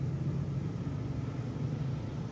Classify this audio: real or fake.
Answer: real